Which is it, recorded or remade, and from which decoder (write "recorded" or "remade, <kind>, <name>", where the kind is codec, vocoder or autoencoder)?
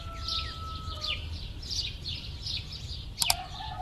recorded